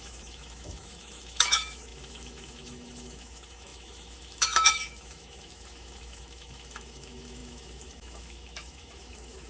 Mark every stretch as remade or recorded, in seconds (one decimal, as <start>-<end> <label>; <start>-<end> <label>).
0.0-9.5 remade